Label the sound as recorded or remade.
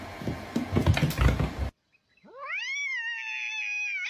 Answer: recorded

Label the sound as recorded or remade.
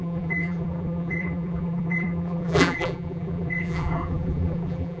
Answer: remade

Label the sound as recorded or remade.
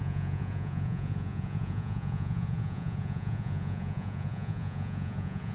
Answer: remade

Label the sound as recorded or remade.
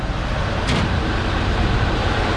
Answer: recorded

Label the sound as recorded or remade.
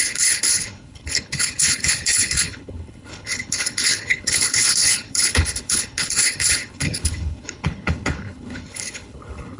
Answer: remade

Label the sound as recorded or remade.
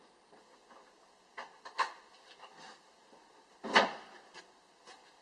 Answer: recorded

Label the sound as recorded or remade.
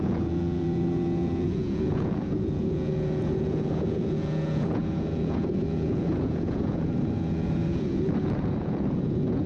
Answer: remade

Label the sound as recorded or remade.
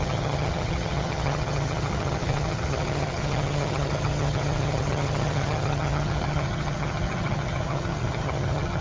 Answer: remade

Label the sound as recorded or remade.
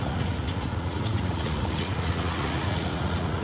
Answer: remade